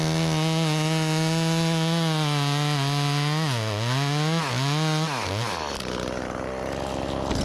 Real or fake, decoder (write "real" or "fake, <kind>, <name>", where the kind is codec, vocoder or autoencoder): real